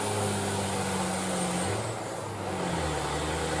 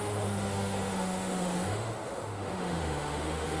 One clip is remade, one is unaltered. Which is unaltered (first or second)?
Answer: first